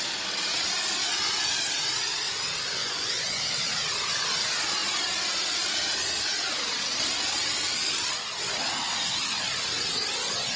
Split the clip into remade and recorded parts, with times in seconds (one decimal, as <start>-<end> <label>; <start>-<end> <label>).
0.0-2.8 recorded; 2.8-3.4 remade; 3.4-10.6 recorded